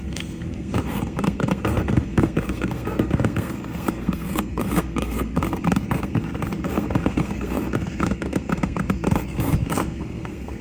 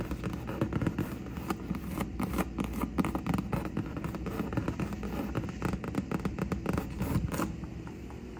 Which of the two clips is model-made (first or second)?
first